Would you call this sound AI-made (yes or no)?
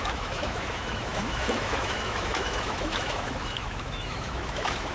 yes